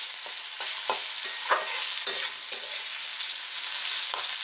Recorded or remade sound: recorded